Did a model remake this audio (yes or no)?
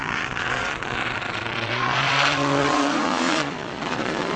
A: yes